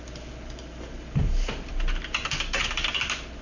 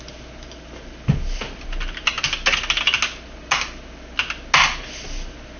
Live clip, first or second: second